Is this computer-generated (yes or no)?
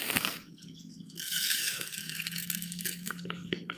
yes